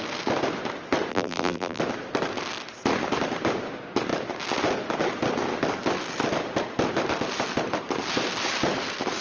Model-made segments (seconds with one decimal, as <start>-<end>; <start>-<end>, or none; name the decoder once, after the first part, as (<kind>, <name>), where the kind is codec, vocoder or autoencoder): 1.1-1.8 (vocoder, BigVGAN v2)